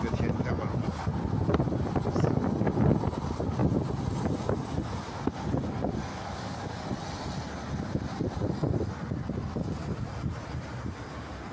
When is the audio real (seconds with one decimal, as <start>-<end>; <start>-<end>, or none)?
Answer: 0.0-6.1; 6.7-11.5